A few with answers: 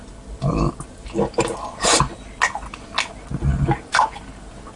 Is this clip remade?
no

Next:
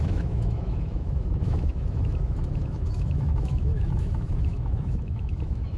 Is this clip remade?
yes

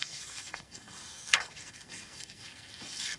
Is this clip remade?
yes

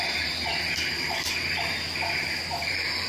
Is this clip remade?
yes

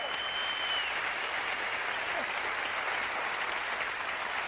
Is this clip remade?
yes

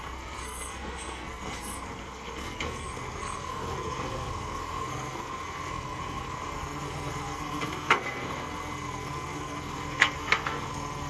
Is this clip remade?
yes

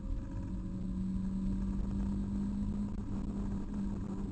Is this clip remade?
no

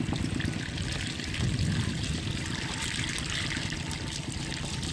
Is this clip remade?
no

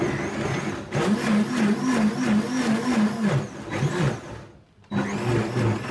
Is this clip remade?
no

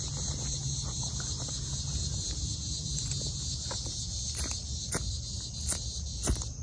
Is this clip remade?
no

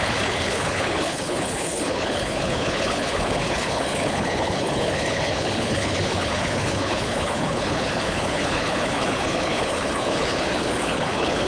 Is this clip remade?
yes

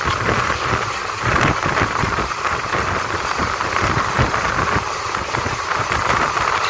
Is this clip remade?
yes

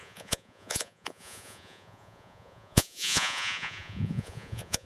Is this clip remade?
yes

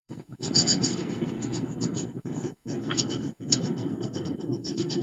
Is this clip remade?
yes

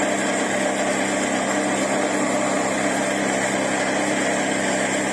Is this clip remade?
no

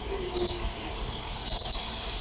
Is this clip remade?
yes